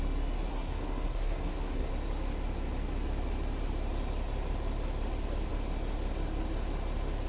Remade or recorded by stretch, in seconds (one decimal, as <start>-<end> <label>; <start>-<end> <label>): 0.0-0.5 recorded; 0.5-1.9 remade; 1.9-7.3 recorded